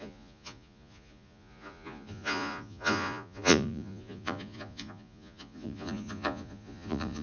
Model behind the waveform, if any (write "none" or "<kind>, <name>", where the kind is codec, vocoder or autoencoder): vocoder, Vocos